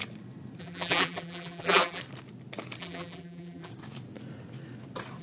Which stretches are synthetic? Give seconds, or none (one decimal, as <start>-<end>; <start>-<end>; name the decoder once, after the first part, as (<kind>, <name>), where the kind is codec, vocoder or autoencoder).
0.6-2.0 (vocoder, BigVGAN v2); 2.8-3.7